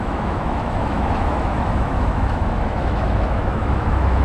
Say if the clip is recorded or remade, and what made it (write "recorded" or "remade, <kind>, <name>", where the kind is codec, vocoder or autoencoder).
remade, autoencoder, DAC-VAE